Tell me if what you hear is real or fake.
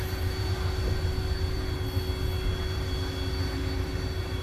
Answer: real